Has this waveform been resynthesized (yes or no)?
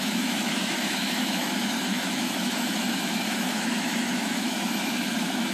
yes